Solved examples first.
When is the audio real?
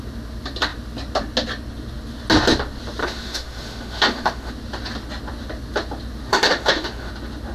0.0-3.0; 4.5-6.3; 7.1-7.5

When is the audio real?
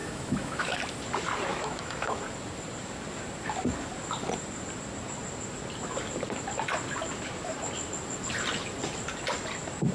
0.8-1.5; 2.2-9.9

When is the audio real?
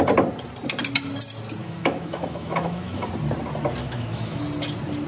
0.0-1.6; 3.1-3.8; 4.4-5.1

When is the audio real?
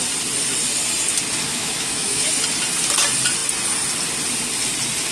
0.0-1.5; 2.3-5.1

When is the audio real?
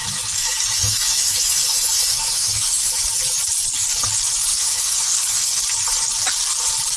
3.0-4.5; 5.6-7.0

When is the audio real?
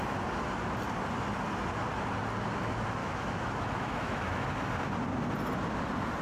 0.0-3.0; 4.5-6.2